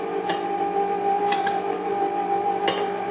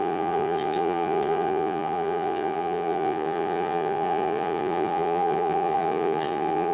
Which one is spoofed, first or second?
second